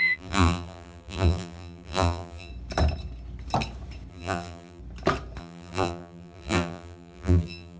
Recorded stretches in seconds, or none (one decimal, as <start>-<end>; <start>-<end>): 2.5-4.1; 4.8-5.4